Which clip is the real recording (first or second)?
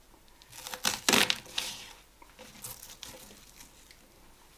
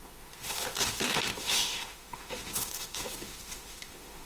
first